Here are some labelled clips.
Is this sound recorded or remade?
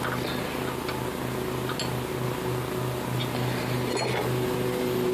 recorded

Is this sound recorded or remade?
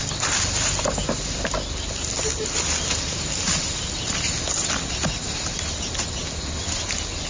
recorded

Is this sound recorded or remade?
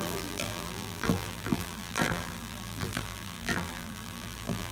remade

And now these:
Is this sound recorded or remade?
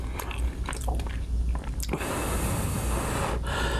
recorded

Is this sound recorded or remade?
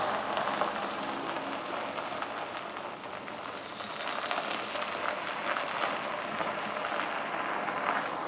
recorded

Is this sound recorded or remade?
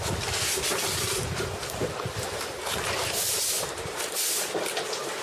remade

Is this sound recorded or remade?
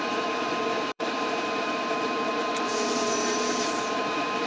remade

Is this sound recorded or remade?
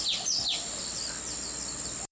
remade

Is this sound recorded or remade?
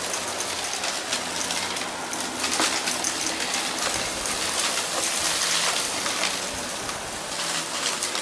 recorded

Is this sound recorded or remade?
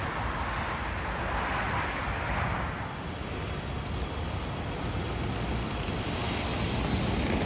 recorded